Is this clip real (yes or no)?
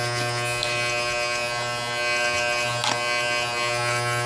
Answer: yes